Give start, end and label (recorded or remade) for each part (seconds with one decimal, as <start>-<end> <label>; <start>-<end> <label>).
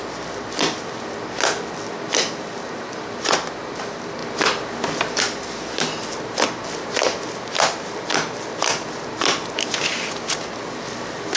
0.0-11.4 recorded